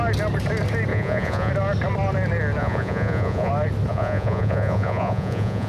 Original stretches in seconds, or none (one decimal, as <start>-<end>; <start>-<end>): 0.0-0.9; 1.5-2.6; 3.5-3.9